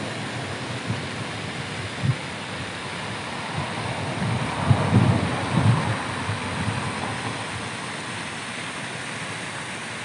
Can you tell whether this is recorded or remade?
recorded